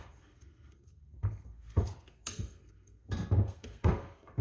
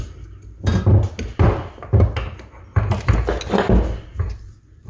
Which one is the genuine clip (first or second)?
second